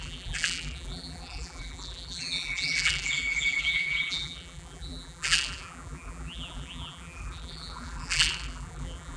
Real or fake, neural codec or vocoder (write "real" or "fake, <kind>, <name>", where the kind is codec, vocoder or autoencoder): fake, vocoder, BigVGAN v2